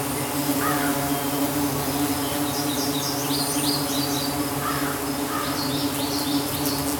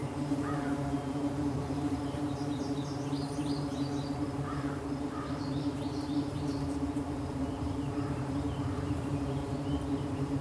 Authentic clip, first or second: first